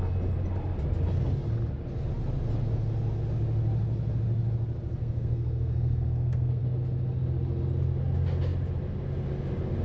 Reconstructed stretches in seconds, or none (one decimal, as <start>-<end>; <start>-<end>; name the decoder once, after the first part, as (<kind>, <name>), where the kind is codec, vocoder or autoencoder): 5.0-6.6 (codec, SNAC)